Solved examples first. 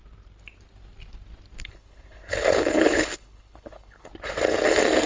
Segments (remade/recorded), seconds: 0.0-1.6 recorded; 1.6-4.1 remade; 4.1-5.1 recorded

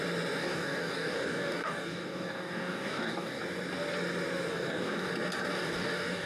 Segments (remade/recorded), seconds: 0.0-0.4 recorded; 0.4-3.4 remade; 3.4-4.5 recorded; 4.5-5.1 remade; 5.1-5.5 recorded; 5.5-6.3 remade

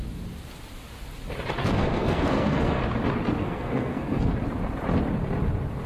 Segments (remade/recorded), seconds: 0.0-1.6 recorded; 1.6-2.8 remade; 2.8-3.4 recorded; 3.4-4.3 remade; 4.3-5.9 recorded

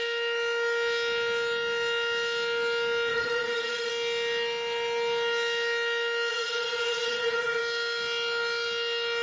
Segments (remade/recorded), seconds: 0.0-3.1 recorded; 3.1-3.9 remade; 3.9-6.3 recorded; 6.3-7.6 remade; 7.6-9.2 recorded

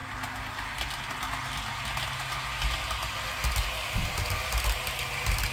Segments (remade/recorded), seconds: 0.0-5.5 recorded

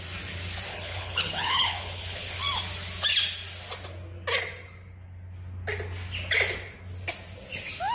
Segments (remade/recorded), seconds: 0.0-0.7 recorded; 0.7-2.4 remade; 2.4-7.9 recorded